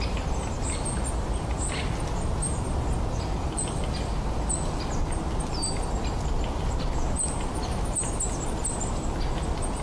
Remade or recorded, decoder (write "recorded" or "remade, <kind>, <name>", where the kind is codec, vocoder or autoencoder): recorded